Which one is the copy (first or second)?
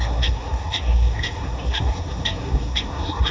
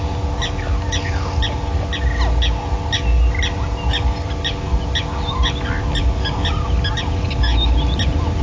first